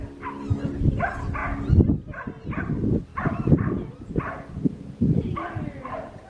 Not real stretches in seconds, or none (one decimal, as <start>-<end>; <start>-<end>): none